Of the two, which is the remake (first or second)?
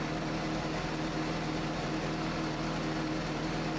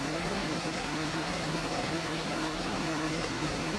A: second